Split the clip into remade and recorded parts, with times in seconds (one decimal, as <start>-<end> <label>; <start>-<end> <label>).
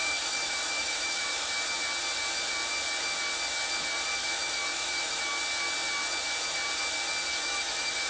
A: 0.0-1.5 remade; 1.5-4.2 recorded; 4.2-5.2 remade; 5.2-7.3 recorded; 7.3-8.1 remade